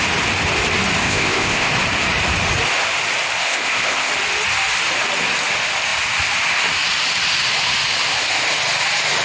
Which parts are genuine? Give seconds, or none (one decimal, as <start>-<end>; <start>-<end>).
0.0-1.0; 1.7-3.4; 4.1-9.2